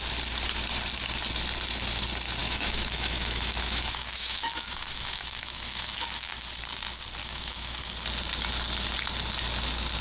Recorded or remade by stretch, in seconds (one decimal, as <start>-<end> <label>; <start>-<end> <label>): 0.0-2.4 recorded; 2.4-6.3 remade; 6.3-7.2 recorded; 7.2-7.8 remade; 7.8-10.0 recorded